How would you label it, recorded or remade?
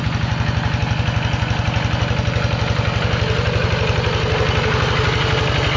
recorded